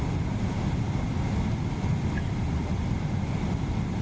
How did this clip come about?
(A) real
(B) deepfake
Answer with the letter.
A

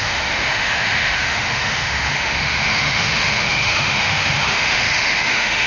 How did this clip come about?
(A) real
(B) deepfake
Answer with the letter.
B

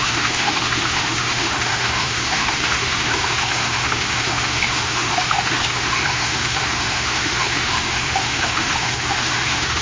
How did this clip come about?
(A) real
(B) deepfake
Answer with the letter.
B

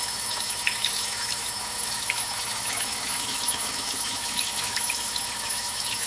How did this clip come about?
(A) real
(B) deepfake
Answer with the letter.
B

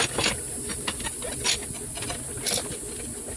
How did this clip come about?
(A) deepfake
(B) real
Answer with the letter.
B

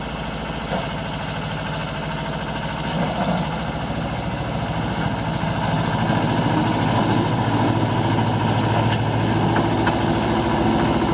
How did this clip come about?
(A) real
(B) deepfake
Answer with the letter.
A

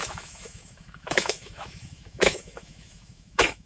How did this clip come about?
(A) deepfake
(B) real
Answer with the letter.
A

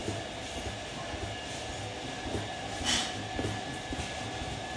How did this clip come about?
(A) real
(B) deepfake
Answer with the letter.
A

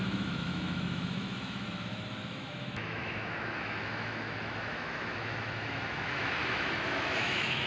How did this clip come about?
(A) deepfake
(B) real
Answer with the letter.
A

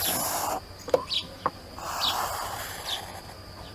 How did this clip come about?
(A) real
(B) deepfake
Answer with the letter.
A